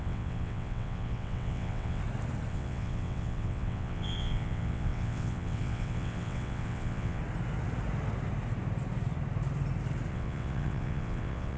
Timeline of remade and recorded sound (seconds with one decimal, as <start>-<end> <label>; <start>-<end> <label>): 0.0-2.0 remade; 2.0-2.5 recorded; 2.5-7.2 remade; 7.2-10.1 recorded; 10.1-11.6 remade